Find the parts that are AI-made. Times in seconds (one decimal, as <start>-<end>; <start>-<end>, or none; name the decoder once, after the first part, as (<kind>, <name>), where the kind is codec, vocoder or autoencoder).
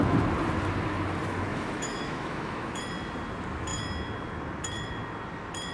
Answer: 1.5-2.8 (autoencoder, DAC-VAE)